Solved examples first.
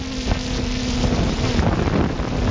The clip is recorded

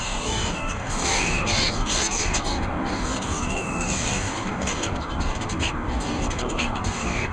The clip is remade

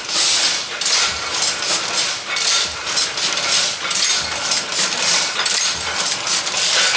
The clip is recorded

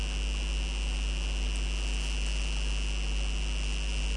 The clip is recorded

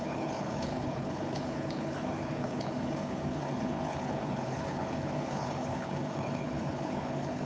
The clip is remade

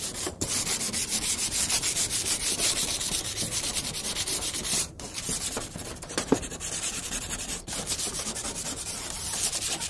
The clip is remade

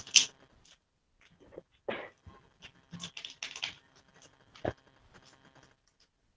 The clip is recorded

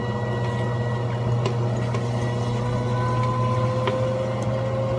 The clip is recorded